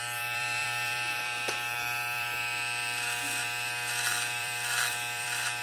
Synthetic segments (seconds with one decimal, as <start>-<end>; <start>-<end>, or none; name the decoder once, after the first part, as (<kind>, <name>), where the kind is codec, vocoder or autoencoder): 0.0-5.6 (vocoder, BigVGAN v2)